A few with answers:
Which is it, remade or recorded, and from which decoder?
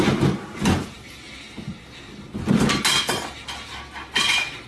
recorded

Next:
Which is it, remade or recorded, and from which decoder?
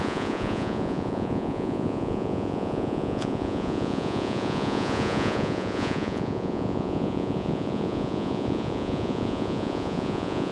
remade, vocoder, Vocos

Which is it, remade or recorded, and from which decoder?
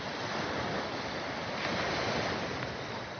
recorded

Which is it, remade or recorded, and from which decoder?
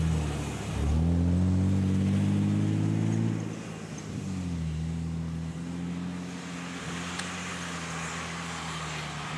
recorded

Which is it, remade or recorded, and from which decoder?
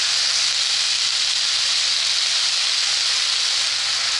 recorded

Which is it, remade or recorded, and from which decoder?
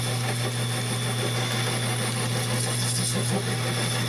recorded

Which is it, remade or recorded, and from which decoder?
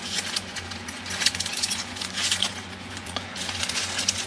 remade, vocoder, Vocos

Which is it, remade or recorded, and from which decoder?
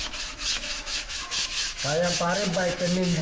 remade, autoencoder, DAC-VAE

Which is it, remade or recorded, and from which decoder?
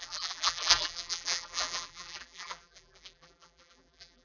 remade, vocoder, BigVGAN v2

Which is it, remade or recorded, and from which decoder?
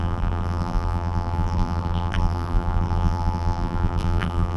remade, vocoder, BigVGAN v2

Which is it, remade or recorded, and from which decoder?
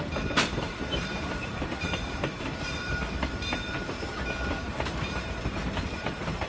remade, vocoder, BigVGAN v2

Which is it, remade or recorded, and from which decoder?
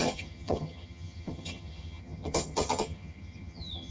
remade, vocoder, HiFi-GAN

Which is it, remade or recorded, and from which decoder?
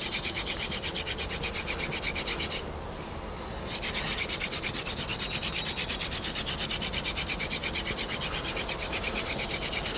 recorded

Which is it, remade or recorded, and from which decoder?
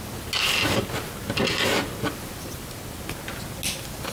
recorded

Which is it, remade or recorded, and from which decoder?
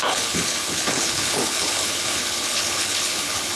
remade, codec, HILCodec